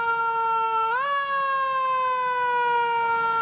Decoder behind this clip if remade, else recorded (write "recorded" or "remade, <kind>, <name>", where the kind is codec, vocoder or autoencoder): recorded